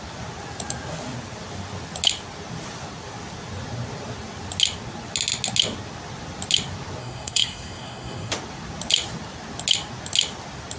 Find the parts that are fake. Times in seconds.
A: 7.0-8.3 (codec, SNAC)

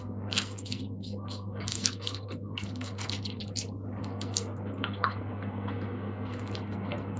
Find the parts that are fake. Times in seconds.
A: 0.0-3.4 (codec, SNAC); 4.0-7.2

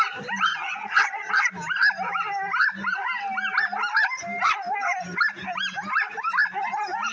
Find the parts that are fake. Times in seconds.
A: 0.5-1.3 (vocoder, HiFi-GAN)

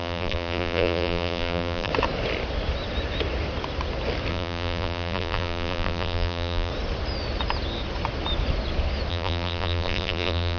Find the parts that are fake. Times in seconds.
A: 0.0-1.9 (vocoder, BigVGAN v2); 4.3-6.7; 9.1-10.6

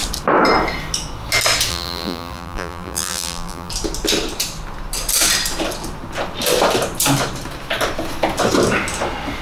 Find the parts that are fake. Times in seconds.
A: 1.7-3.7 (vocoder, BigVGAN v2)